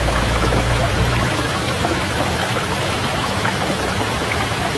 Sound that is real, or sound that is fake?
fake